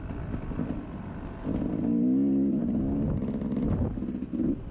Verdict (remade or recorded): recorded